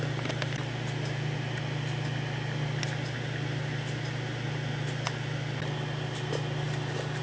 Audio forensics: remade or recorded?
recorded